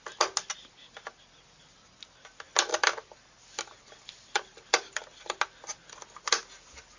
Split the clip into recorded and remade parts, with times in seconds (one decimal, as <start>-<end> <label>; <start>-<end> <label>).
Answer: 0.0-2.7 recorded; 2.7-5.0 remade; 5.0-7.0 recorded